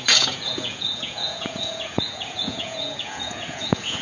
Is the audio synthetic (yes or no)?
yes